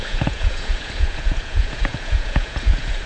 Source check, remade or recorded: remade